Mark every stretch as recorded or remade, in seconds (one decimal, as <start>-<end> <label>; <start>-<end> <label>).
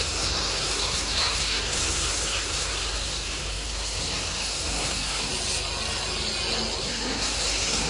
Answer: 0.0-5.3 remade; 5.3-6.8 recorded; 6.8-7.9 remade